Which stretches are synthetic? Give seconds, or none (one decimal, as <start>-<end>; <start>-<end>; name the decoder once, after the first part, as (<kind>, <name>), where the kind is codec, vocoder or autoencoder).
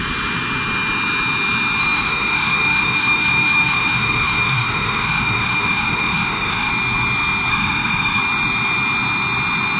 1.8-6.7 (autoencoder, DAC-VAE); 7.5-8.2